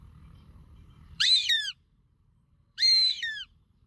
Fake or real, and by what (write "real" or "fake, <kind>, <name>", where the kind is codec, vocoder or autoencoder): fake, vocoder, BigVGAN v2